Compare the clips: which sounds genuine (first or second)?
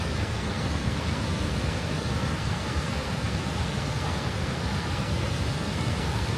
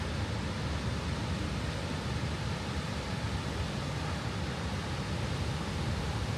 second